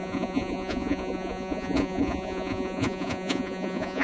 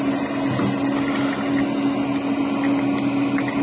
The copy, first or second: first